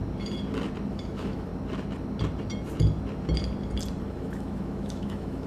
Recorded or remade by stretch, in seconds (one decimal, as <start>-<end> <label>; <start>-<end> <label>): 0.0-0.9 recorded; 0.9-1.5 remade; 1.5-4.1 recorded; 4.1-5.5 remade